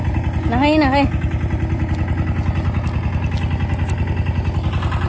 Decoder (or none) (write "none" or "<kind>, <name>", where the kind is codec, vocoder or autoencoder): none